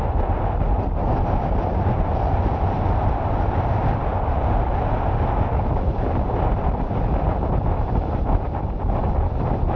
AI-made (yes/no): no